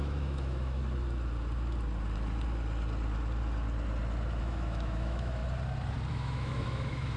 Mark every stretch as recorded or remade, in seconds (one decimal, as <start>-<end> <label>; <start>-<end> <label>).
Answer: 0.0-0.8 remade; 0.8-4.4 recorded; 4.4-5.4 remade; 5.4-6.1 recorded; 6.1-7.2 remade